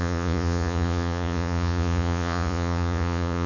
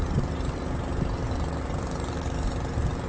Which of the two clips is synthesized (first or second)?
first